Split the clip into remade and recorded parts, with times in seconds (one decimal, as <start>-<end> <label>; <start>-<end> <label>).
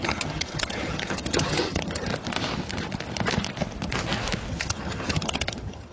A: 0.0-2.1 remade; 2.1-4.5 recorded; 4.5-5.9 remade